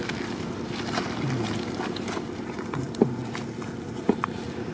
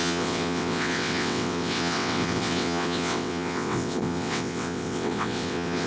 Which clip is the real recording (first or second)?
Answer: first